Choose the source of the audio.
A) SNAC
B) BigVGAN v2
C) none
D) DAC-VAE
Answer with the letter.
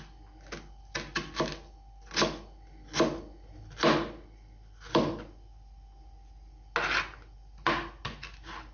C